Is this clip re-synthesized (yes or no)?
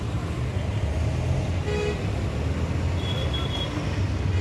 no